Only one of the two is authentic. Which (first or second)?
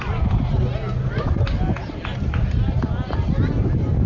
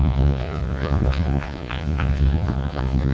first